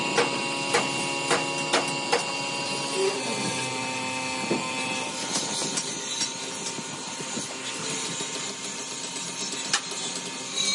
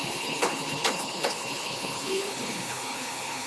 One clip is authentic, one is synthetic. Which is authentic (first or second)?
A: first